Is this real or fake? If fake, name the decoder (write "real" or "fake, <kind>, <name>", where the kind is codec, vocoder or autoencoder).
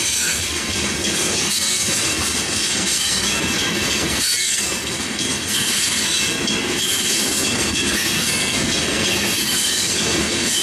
fake, codec, SNAC